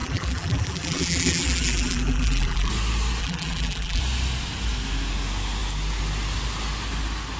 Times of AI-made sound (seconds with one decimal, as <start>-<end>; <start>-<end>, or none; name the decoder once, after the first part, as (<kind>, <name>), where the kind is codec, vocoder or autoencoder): 0.0-2.7 (vocoder, BigVGAN v2); 3.2-4.0